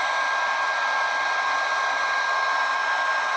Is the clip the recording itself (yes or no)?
yes